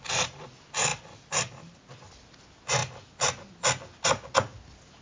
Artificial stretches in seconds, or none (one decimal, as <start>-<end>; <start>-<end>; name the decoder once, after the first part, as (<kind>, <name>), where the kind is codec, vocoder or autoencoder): none

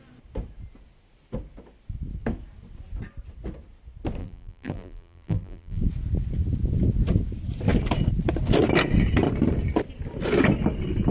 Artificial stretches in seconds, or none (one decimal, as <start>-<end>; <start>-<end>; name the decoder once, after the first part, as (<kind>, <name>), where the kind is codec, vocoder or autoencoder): 4.2-5.8 (vocoder, BigVGAN v2)